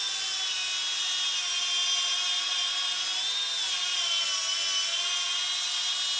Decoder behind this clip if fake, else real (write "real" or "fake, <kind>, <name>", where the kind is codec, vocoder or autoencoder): real